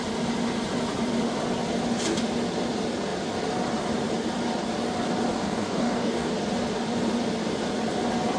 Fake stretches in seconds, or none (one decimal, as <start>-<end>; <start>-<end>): 5.3-6.3